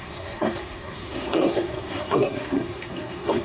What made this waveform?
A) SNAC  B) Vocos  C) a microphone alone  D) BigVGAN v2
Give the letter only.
A